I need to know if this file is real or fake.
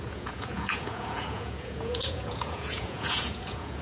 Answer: fake